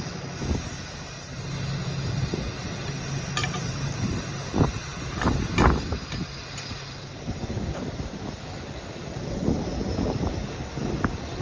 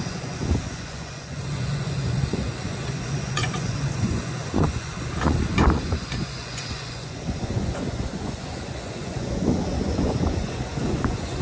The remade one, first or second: second